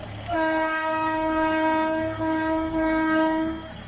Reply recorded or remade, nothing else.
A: remade